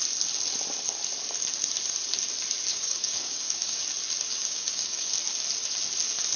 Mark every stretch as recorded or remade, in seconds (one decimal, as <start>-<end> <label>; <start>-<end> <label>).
0.0-2.7 recorded; 2.7-3.8 remade; 3.8-4.3 recorded; 4.3-5.1 remade; 5.1-6.4 recorded